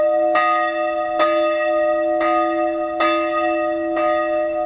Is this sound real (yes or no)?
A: yes